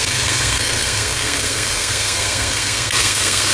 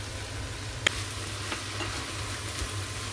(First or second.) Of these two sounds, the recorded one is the second